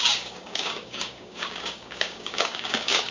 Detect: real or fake fake